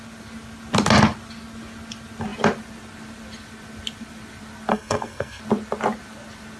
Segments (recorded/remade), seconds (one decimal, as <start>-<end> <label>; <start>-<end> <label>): 0.0-4.7 recorded; 4.7-5.4 remade; 5.4-6.6 recorded